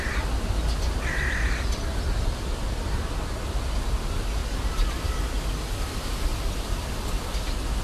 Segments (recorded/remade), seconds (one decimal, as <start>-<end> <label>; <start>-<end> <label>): 0.0-1.9 recorded; 1.9-3.0 remade; 3.0-4.4 recorded; 4.4-5.0 remade; 5.0-6.3 recorded; 6.3-6.9 remade; 6.9-7.8 recorded